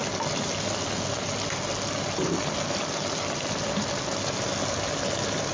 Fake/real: real